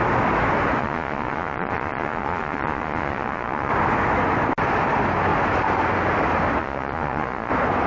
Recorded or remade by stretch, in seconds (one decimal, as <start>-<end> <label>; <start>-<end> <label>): 0.0-0.8 recorded; 0.8-3.7 remade; 3.7-6.6 recorded; 6.6-7.5 remade; 7.5-7.9 recorded